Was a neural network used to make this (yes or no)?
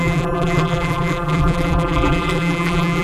yes